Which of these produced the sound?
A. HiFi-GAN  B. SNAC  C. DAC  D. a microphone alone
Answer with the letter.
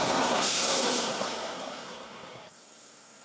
B